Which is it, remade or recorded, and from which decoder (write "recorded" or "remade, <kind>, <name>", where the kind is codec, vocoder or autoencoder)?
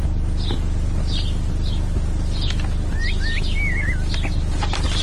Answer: recorded